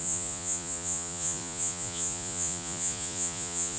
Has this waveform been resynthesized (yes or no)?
yes